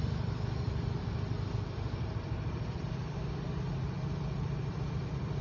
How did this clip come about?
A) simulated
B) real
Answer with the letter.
A